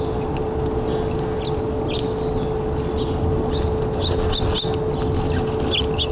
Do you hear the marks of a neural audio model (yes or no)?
no